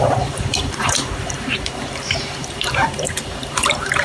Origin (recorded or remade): remade